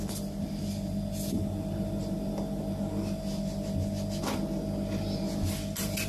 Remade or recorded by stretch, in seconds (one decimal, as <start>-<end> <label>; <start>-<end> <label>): 0.0-6.1 recorded